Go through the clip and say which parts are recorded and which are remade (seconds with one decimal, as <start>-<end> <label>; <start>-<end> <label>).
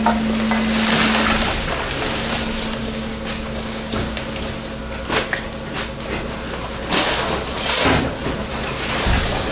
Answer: 0.0-2.8 recorded; 2.8-4.2 remade; 4.2-9.5 recorded